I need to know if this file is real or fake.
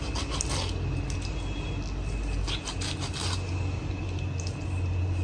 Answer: real